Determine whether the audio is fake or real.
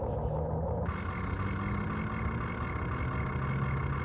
real